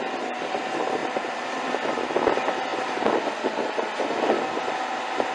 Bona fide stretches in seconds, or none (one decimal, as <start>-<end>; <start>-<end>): 0.0-1.0; 1.7-5.3